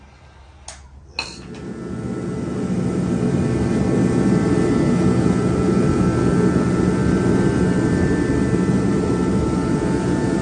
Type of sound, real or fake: real